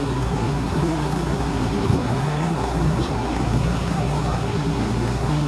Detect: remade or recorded remade